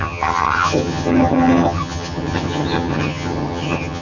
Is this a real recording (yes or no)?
no